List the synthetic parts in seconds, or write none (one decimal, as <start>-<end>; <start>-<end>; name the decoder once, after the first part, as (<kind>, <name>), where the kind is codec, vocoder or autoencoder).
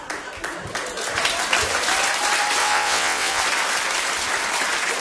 2.6-3.4 (vocoder, WaveNeXt)